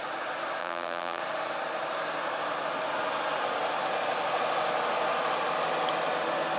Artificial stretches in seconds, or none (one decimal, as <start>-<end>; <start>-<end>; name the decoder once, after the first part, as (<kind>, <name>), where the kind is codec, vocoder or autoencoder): 0.6-1.2 (vocoder, BigVGAN v2)